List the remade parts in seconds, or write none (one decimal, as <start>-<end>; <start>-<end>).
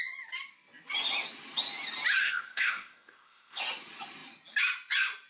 2.2-3.6